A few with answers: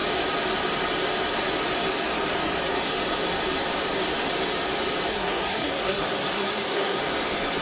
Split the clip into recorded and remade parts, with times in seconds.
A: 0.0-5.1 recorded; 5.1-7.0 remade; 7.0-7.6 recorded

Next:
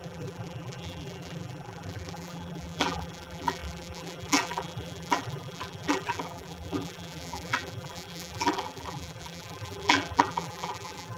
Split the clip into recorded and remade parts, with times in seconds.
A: 0.0-11.2 remade